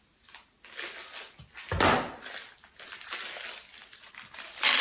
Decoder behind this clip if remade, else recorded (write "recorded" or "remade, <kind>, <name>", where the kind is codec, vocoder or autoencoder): recorded